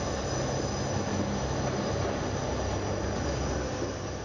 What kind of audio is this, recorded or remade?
recorded